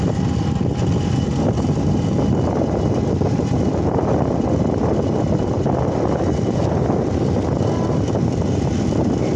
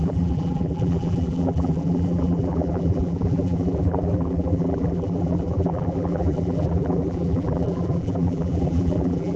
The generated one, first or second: second